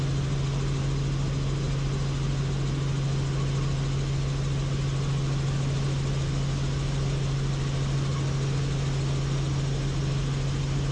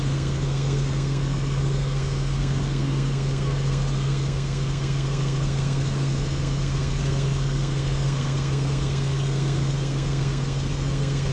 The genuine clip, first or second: first